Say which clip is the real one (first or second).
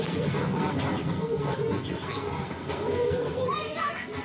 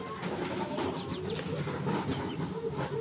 second